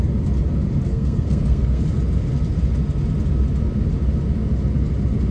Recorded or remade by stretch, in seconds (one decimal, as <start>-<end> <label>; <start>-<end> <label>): 0.0-0.9 recorded; 0.9-1.8 remade; 1.8-5.3 recorded